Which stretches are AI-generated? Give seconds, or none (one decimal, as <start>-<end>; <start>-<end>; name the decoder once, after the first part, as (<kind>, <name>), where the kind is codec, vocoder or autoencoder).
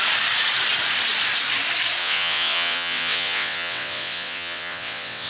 2.0-5.3 (vocoder, WaveNeXt)